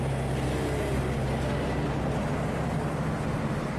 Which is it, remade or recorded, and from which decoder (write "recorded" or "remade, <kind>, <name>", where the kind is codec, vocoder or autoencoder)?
recorded